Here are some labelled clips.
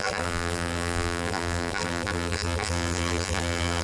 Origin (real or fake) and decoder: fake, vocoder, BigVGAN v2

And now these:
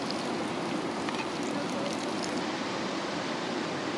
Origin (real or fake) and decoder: fake, vocoder, BigVGAN v2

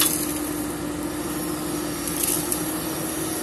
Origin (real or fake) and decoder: real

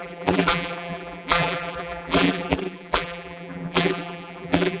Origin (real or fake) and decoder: fake, vocoder, BigVGAN v2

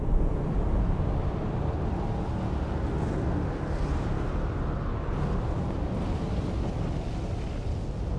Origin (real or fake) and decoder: real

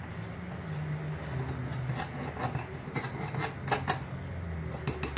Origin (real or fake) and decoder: real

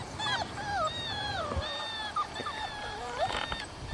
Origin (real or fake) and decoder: fake, vocoder, BigVGAN v2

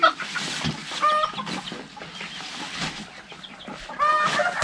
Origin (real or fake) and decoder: real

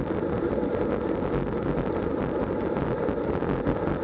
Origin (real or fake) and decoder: fake, vocoder, BigVGAN v2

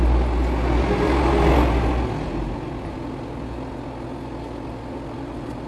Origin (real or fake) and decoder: real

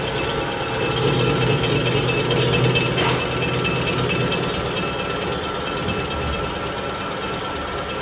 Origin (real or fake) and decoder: real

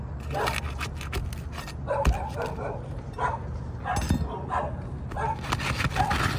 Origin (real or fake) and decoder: real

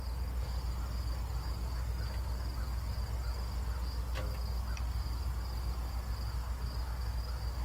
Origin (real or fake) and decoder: real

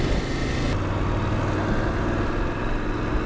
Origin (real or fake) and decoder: real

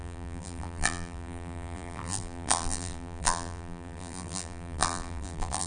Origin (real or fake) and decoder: fake, vocoder, BigVGAN v2